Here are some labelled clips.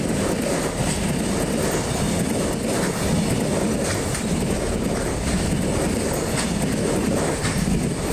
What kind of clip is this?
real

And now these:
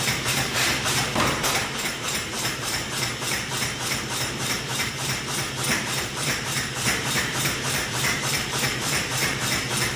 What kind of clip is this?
fake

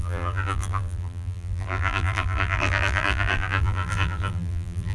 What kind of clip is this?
fake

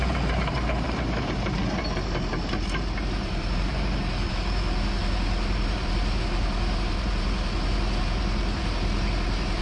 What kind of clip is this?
fake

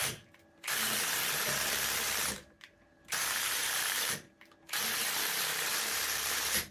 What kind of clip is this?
fake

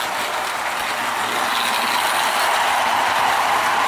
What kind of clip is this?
real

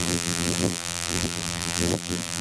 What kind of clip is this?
fake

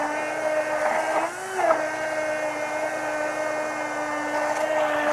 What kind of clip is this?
real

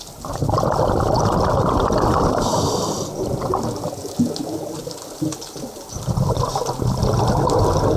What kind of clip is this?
real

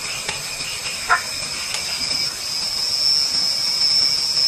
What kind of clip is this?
real